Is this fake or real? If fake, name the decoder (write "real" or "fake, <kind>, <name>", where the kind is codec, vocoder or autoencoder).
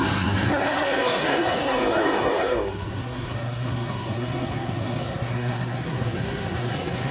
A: fake, codec, SNAC